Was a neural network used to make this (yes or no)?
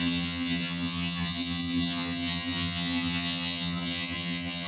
yes